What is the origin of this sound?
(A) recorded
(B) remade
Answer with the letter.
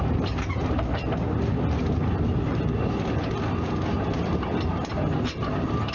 A